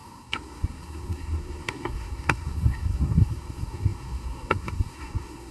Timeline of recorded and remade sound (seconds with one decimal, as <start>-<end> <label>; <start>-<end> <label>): 0.0-5.5 remade